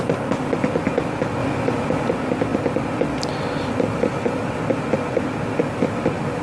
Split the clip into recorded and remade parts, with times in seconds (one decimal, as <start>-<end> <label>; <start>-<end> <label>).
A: 0.0-6.4 recorded